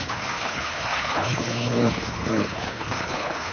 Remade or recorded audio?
remade